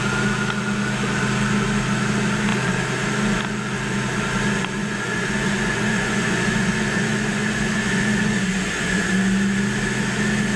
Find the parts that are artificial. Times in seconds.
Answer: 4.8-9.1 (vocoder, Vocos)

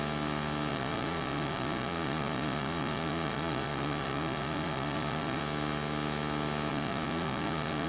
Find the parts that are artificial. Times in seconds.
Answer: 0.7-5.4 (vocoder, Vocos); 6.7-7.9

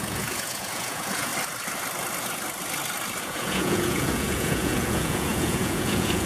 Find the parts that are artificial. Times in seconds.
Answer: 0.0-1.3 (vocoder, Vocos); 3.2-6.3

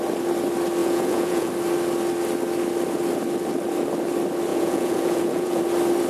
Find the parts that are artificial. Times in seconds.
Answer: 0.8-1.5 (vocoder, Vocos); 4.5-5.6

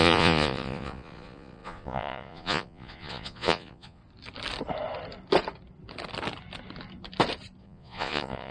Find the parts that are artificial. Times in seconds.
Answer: 0.0-4.0 (vocoder, Vocos); 7.6-8.5